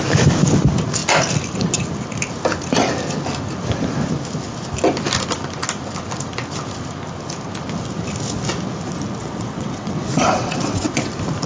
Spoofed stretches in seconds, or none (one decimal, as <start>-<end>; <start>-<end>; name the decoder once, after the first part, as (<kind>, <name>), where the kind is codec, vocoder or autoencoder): 9.2-11.1 (vocoder, WaveNeXt)

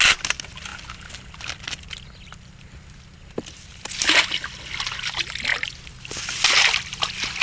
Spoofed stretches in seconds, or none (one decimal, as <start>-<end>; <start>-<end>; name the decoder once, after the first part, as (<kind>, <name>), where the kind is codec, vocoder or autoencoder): none